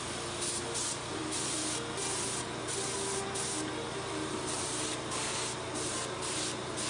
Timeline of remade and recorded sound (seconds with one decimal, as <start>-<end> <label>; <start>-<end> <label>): 0.0-6.9 recorded